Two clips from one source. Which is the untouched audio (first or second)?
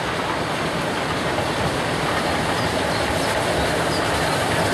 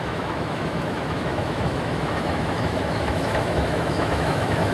first